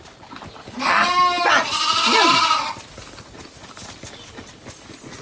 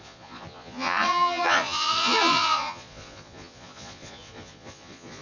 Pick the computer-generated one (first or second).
second